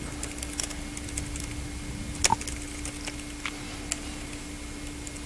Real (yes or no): yes